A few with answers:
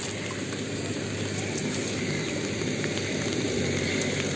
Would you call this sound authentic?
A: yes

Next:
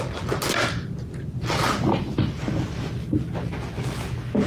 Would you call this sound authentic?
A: yes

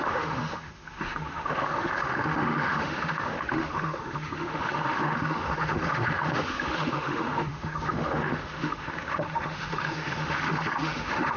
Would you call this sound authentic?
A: no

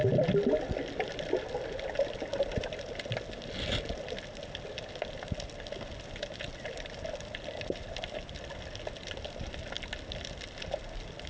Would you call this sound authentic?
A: yes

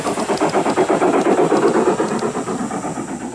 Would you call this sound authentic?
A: yes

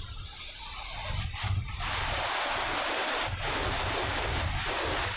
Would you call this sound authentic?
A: yes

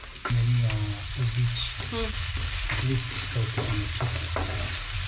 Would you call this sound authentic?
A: yes